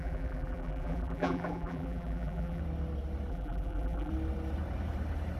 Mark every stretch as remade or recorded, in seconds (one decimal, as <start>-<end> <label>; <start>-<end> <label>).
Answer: 0.0-2.6 remade; 2.6-3.3 recorded; 3.3-4.1 remade; 4.1-5.4 recorded